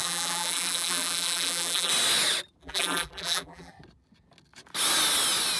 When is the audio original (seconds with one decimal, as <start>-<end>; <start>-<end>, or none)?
1.9-2.6; 3.7-5.6